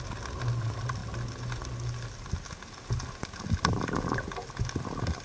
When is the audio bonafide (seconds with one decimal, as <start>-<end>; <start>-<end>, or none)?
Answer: 0.0-5.2